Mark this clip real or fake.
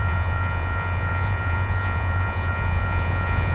fake